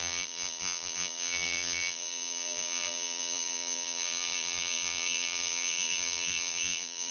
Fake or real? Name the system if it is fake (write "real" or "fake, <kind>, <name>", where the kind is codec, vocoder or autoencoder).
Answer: fake, vocoder, BigVGAN v2